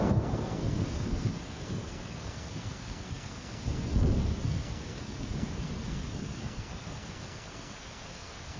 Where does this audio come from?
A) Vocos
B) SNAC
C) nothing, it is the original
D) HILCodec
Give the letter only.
B